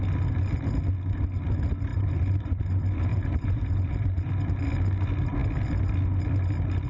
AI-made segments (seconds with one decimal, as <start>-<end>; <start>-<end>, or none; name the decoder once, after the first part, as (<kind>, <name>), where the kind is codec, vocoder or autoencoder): 1.9-2.6 (vocoder, BigVGAN v2); 3.1-4.3